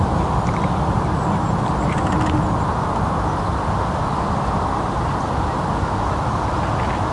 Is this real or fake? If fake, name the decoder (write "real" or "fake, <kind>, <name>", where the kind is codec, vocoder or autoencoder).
real